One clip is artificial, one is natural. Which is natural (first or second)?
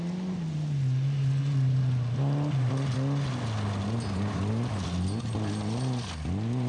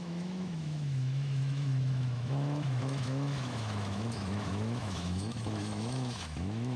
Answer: first